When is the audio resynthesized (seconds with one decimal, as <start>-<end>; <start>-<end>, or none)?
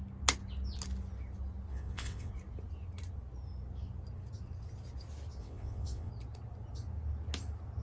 1.7-2.3; 5.4-6.1